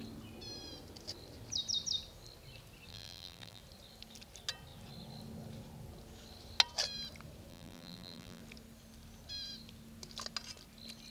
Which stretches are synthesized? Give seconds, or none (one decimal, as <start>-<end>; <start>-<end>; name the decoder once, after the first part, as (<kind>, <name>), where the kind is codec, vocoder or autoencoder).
2.9-3.6 (vocoder, BigVGAN v2); 7.5-8.4